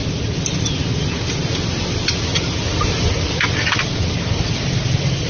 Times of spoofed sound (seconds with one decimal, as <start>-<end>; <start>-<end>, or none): none